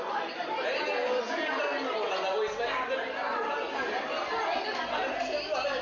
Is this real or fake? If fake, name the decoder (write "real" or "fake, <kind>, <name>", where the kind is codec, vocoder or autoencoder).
real